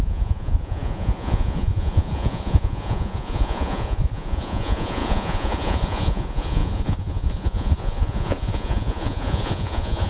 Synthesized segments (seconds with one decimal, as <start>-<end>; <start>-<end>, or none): 0.0-10.1